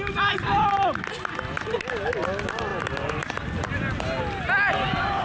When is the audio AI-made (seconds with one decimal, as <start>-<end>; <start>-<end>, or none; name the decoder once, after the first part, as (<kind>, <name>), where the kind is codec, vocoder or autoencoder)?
none